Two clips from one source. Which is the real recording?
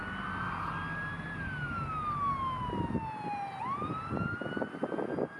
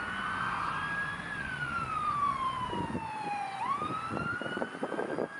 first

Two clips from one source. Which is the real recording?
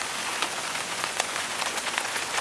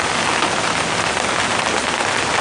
second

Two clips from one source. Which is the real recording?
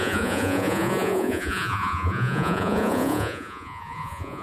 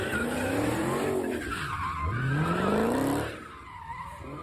second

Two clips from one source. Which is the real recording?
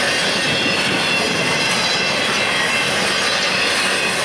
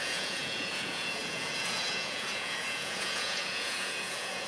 first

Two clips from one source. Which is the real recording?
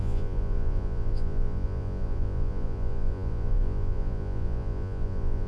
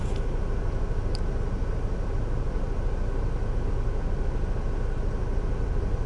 second